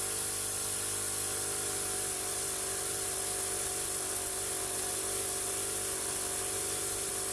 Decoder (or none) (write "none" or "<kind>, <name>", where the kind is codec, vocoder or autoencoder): none